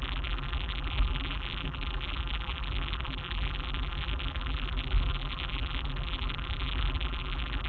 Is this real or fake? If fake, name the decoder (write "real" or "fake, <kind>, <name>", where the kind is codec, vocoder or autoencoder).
fake, vocoder, BigVGAN v2